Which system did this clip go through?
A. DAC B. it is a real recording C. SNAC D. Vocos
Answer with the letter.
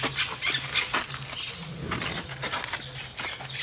B